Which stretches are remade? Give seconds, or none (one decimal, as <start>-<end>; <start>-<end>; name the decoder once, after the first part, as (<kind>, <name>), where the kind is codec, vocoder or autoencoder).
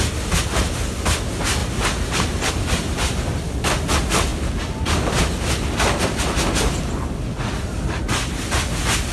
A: none